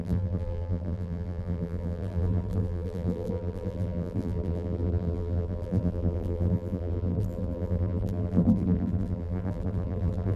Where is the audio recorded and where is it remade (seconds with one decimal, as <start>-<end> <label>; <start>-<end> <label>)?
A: 0.0-10.4 remade